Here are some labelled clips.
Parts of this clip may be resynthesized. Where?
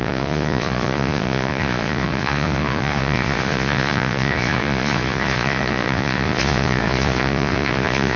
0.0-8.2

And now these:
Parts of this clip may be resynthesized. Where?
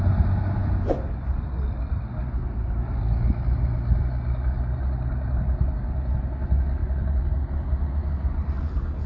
none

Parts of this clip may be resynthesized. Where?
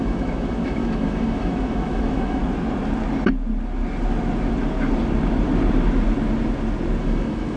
0.0-2.4; 7.0-7.6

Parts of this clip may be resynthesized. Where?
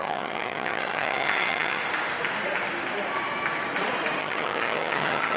0.0-1.8; 4.2-5.4